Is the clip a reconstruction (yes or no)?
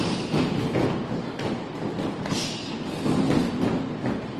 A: no